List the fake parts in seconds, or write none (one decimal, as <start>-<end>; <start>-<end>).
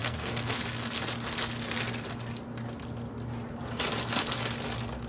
0.0-0.6